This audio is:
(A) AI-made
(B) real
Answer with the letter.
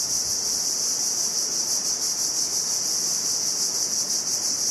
B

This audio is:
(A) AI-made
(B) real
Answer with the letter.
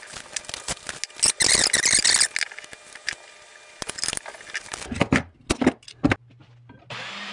B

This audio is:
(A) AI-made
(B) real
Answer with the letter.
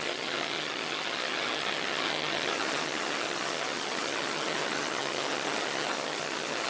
A